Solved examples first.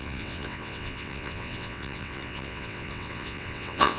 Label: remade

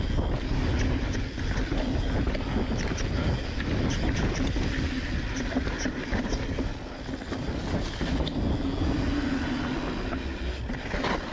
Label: recorded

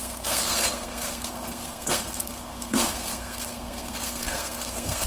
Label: remade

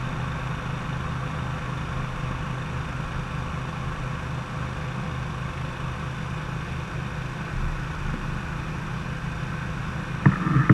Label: recorded